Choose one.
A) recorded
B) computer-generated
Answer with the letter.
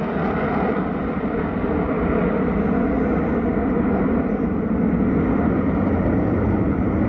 A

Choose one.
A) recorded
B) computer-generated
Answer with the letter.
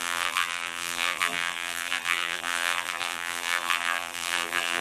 B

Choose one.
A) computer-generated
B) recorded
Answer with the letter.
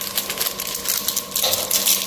B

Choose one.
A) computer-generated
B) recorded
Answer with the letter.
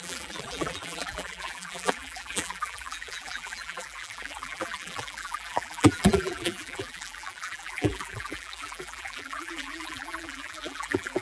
A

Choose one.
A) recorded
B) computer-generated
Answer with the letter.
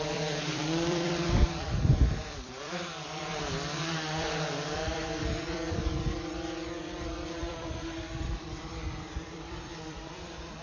B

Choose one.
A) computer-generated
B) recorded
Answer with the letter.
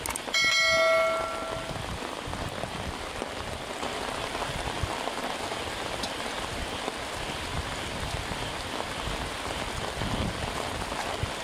B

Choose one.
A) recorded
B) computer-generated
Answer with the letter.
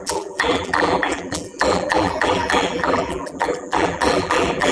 B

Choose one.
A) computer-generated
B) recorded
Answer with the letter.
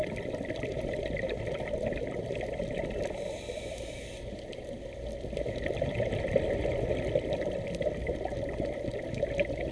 A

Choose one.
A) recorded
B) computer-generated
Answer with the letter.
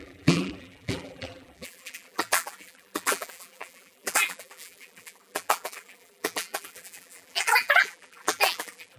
B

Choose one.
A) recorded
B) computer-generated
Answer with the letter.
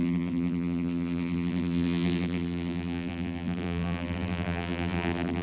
B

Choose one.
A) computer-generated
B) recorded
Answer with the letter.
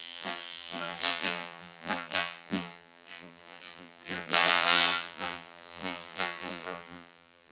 A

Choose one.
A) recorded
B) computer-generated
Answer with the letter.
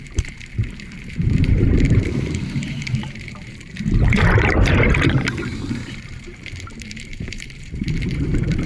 B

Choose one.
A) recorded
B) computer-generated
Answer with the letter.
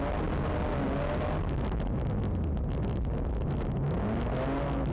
A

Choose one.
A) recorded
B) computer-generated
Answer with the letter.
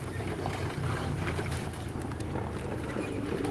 B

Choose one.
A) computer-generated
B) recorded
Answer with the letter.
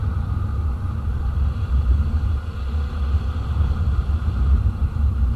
A